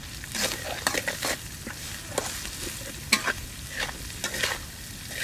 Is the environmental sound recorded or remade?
recorded